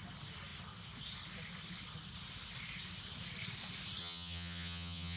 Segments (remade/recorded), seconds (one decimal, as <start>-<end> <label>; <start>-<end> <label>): 0.0-4.0 recorded; 4.0-5.2 remade